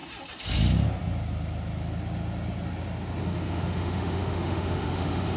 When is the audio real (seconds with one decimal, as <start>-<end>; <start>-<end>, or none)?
0.0-3.2